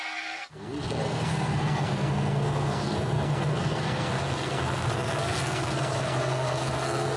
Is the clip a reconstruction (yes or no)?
yes